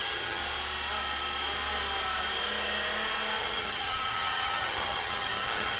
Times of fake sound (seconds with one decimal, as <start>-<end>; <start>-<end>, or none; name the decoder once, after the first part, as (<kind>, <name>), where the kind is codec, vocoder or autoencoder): 0.0-0.4 (vocoder, HiFi-GAN); 3.4-5.8